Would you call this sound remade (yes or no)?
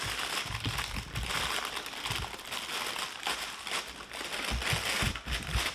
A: no